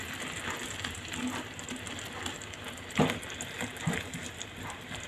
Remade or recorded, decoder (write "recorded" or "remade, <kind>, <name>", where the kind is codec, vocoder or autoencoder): recorded